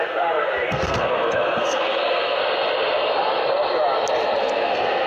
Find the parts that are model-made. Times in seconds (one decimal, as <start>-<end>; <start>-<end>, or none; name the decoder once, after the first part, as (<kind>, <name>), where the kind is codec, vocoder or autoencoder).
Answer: 0.0-2.4 (codec, SNAC); 4.4-5.1